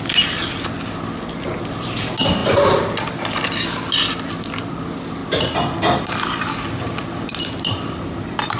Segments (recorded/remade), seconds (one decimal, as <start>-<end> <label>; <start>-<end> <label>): 0.0-8.6 recorded

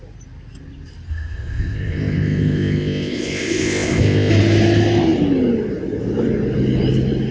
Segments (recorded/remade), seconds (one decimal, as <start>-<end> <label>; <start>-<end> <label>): 0.0-1.1 recorded; 1.1-4.3 remade; 4.3-7.3 recorded

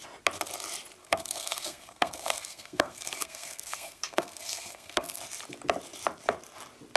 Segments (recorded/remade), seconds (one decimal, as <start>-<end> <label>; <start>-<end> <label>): 0.0-1.0 recorded; 1.0-5.2 remade; 5.2-7.0 recorded

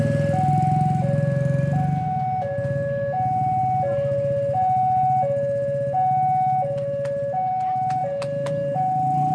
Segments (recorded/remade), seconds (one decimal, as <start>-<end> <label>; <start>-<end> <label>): 0.0-9.3 recorded

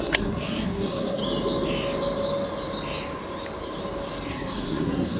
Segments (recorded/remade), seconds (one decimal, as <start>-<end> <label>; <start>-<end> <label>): 0.0-1.2 remade; 1.2-4.3 recorded; 4.3-5.2 remade

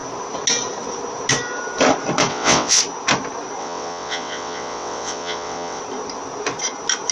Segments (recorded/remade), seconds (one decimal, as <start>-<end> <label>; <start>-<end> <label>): 0.0-2.3 recorded; 2.3-2.8 remade; 2.8-3.6 recorded; 3.6-5.8 remade; 5.8-7.1 recorded

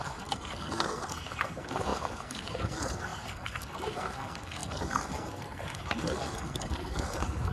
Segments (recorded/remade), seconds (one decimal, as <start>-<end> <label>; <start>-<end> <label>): 0.0-7.5 remade

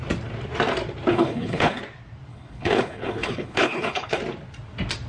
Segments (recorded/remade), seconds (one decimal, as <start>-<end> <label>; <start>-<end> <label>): 0.0-1.1 recorded; 1.1-1.8 remade; 1.8-2.3 recorded; 2.3-4.2 remade; 4.2-5.1 recorded